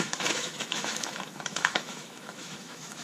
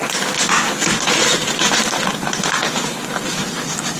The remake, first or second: first